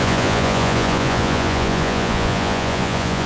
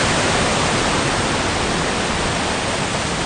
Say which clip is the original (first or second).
second